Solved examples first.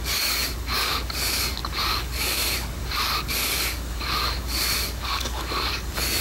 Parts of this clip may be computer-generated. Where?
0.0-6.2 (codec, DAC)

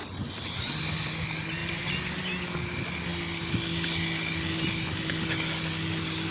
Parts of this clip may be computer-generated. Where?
none

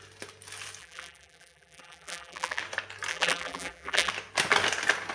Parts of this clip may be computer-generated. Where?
0.8-2.6 (vocoder, BigVGAN v2); 3.1-4.1

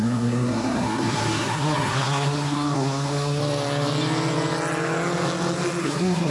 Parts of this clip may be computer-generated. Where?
0.0-3.4 (codec, SNAC); 5.8-6.3

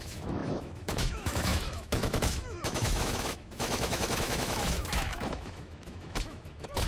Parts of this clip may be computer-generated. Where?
0.0-6.9 (autoencoder, DAC-VAE)